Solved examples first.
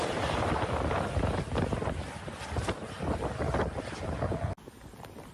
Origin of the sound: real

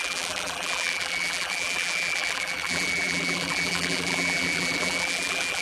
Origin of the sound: fake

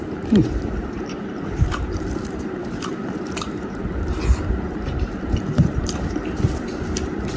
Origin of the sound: fake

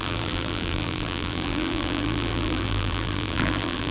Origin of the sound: fake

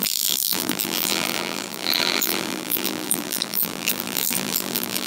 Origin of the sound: fake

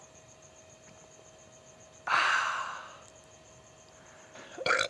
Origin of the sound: fake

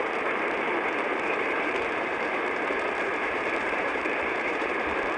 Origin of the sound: fake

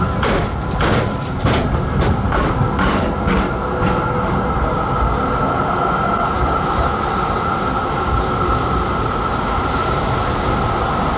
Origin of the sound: real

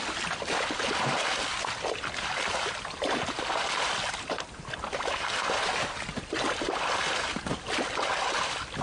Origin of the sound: real